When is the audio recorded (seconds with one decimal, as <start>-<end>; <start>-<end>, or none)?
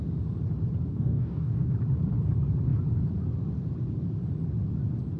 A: 0.0-0.9; 1.7-5.2